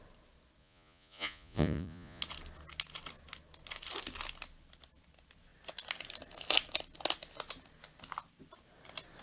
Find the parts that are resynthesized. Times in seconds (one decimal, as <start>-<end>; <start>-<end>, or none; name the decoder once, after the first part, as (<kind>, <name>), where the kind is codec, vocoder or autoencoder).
0.6-2.2 (vocoder, Vocos)